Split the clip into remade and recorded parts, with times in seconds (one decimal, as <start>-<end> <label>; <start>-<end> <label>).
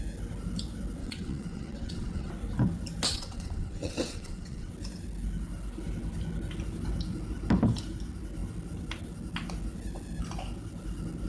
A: 0.0-1.0 recorded; 1.0-2.3 remade; 2.3-3.1 recorded; 3.1-4.7 remade; 4.7-11.3 recorded